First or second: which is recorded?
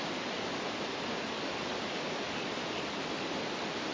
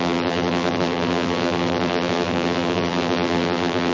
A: first